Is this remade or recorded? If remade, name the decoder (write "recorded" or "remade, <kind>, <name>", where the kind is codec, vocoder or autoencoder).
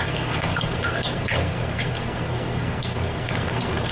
remade, codec, SNAC